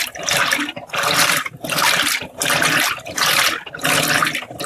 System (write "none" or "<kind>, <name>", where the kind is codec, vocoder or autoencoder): none